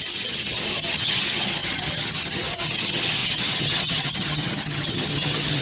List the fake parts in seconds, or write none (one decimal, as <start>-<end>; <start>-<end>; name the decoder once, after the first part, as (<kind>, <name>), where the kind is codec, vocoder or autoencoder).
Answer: 0.0-5.6 (vocoder, HiFi-GAN)